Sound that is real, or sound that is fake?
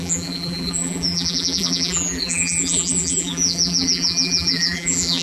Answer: fake